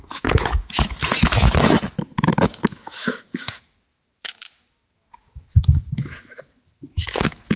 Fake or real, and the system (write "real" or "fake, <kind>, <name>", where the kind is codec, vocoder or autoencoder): fake, autoencoder, DAC-VAE